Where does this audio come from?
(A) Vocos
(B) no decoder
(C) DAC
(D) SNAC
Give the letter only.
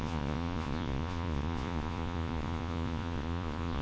A